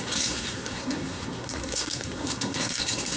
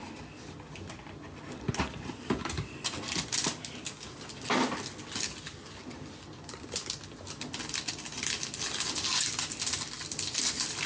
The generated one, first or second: first